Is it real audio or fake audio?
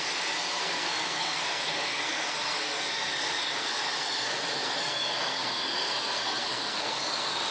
fake